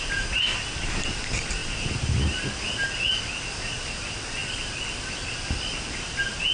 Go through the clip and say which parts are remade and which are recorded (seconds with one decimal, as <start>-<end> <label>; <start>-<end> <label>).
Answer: 0.0-6.5 recorded